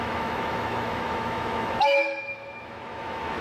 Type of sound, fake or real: fake